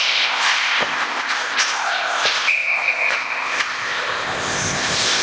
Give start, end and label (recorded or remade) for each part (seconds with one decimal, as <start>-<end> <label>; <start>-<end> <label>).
0.0-5.2 remade